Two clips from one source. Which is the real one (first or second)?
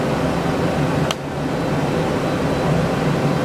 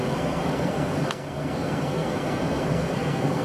first